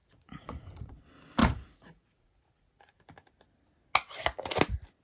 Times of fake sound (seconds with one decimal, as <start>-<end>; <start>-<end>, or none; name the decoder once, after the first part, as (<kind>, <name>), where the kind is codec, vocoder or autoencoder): 0.0-0.9 (vocoder, Vocos); 1.4-3.0